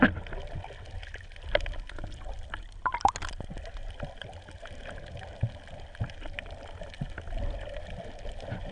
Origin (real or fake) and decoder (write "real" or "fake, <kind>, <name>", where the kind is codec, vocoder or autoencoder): real